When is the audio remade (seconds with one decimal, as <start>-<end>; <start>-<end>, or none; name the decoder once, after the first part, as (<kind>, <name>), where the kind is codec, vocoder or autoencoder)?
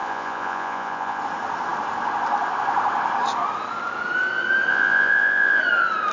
0.0-1.2 (vocoder, Vocos); 4.7-5.6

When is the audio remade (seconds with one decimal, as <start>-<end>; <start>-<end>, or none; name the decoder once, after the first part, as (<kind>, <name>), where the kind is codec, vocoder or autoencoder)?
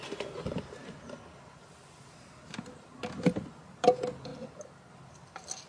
none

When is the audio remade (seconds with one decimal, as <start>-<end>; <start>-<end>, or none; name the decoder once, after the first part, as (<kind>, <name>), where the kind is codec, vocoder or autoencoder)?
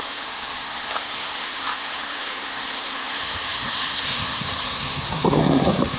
0.0-6.0 (codec, SNAC)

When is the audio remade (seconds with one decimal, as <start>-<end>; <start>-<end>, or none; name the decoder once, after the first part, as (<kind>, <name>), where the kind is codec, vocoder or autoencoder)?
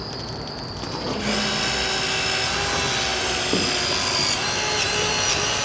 none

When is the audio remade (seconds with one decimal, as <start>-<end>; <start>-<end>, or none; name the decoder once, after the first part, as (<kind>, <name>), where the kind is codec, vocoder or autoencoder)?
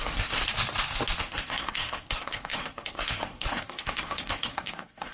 0.0-0.4 (codec, SNAC); 1.2-5.1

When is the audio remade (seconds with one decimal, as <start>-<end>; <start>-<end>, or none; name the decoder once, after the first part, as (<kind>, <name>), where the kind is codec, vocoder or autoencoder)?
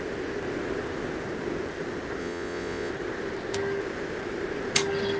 2.2-2.9 (vocoder, Vocos)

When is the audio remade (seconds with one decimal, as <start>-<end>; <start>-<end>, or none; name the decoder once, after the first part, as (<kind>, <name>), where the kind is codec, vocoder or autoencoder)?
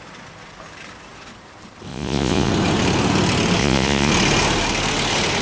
1.9-2.5 (vocoder, Vocos); 3.6-4.1